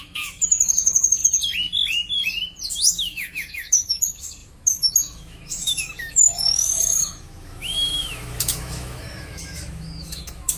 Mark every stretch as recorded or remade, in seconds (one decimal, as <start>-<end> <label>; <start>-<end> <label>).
0.0-1.2 remade; 1.2-2.7 recorded; 2.7-10.6 remade

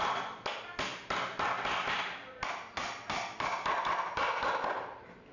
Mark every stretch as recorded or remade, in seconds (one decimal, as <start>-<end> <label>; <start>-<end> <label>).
0.0-5.3 recorded

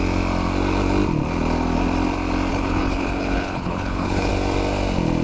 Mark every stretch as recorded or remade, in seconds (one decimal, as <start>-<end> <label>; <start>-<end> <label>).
0.0-2.5 recorded; 2.5-4.3 remade; 4.3-5.2 recorded

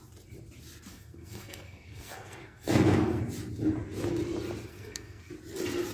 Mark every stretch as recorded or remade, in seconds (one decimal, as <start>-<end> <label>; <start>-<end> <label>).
0.0-0.9 recorded; 0.9-3.2 remade; 3.2-4.7 recorded; 4.7-5.3 remade; 5.3-5.9 recorded

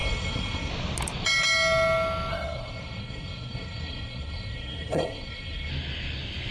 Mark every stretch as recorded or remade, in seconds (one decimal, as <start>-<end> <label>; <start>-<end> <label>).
0.0-0.7 remade; 0.7-2.3 recorded; 2.3-5.7 remade; 5.7-6.5 recorded

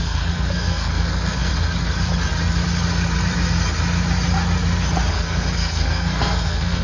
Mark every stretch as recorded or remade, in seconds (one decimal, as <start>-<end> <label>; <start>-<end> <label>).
0.0-1.5 remade; 1.5-5.1 recorded; 5.1-6.8 remade

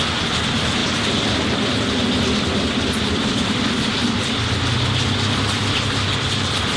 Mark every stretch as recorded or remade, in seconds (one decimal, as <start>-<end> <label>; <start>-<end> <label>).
0.0-6.8 recorded